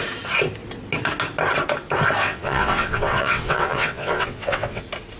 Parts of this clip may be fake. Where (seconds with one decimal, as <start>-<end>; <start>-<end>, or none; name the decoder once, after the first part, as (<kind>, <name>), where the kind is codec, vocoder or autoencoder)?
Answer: 2.2-4.8 (vocoder, WaveNeXt)